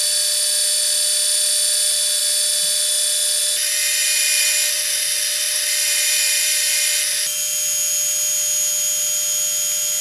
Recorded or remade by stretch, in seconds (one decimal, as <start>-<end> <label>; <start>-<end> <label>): 0.0-5.8 recorded; 5.8-7.0 remade; 7.0-10.0 recorded